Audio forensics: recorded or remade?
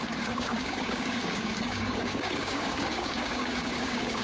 remade